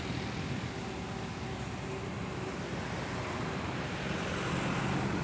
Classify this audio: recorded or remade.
recorded